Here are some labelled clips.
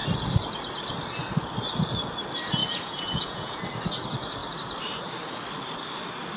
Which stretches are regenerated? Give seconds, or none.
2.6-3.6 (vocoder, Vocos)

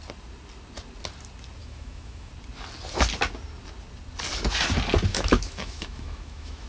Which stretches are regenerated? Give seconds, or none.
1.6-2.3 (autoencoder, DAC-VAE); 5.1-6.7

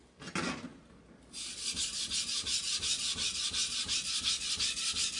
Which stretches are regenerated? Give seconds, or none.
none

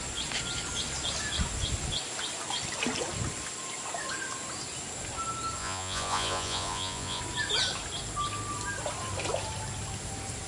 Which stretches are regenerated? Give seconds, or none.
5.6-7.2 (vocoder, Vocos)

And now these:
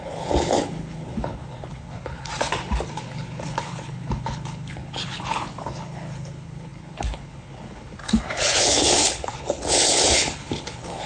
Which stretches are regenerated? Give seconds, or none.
0.0-2.3 (codec, HILCodec); 2.9-11.1

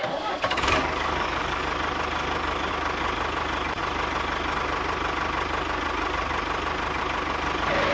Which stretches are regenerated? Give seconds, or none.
0.0-1.6 (codec, DAC)